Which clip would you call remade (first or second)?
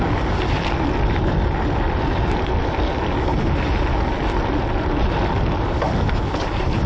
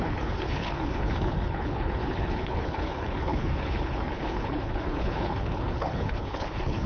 second